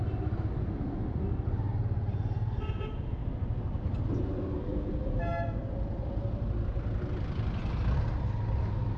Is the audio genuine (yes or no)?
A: yes